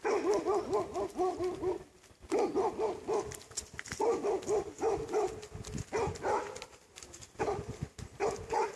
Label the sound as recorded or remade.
recorded